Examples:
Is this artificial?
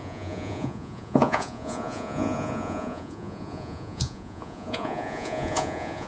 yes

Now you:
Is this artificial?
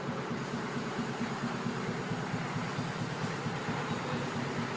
no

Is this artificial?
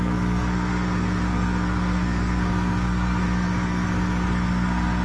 yes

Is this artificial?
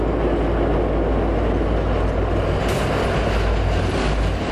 no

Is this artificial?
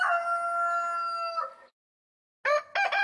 no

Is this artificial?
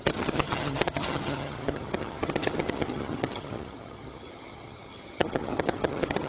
yes